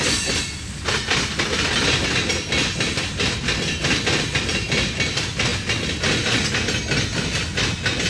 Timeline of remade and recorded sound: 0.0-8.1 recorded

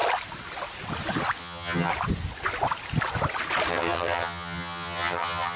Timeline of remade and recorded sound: 0.0-1.4 recorded; 1.4-1.9 remade; 1.9-3.7 recorded; 3.7-5.6 remade

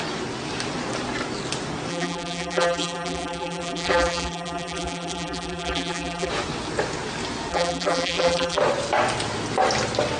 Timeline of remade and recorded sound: 0.0-1.9 recorded; 1.9-6.3 remade; 6.3-7.5 recorded; 7.5-8.6 remade; 8.6-10.2 recorded

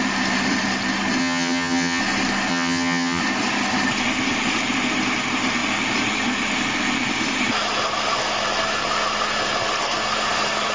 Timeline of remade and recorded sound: 0.0-1.2 recorded; 1.2-2.0 remade; 2.0-2.5 recorded; 2.5-3.2 remade; 3.2-10.7 recorded

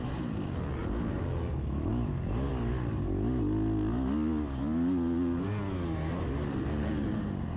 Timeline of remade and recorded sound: 0.0-7.6 recorded

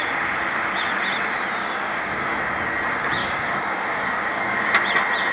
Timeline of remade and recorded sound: 0.0-1.6 recorded; 1.6-2.4 remade; 2.4-3.2 recorded; 3.2-4.7 remade; 4.7-5.3 recorded

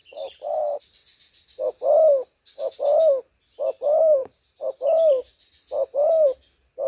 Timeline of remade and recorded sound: 0.0-0.8 remade; 0.8-4.0 recorded; 4.0-5.5 remade; 5.5-6.9 recorded